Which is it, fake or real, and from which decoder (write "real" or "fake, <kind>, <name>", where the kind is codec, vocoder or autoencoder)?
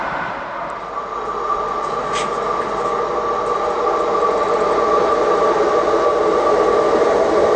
real